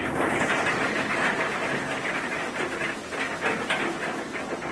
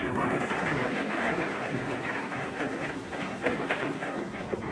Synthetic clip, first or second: second